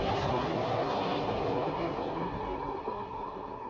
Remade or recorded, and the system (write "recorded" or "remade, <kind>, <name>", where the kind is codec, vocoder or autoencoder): remade, codec, SNAC